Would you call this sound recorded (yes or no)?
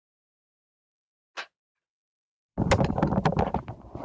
yes